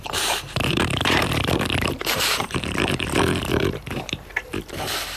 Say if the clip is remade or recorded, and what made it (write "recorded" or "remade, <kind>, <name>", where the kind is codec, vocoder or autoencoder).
remade, vocoder, BigVGAN v2